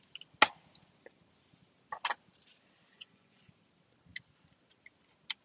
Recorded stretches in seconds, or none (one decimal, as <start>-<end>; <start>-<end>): 0.0-2.9; 3.5-5.4